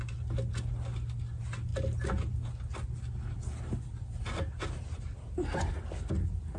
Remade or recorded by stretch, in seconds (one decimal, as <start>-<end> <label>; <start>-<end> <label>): 0.0-6.6 recorded